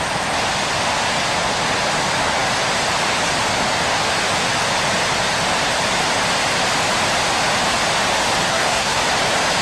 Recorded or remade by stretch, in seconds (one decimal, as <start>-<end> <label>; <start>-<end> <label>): 0.0-8.4 recorded; 8.4-9.0 remade; 9.0-9.6 recorded